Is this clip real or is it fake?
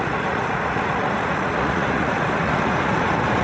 fake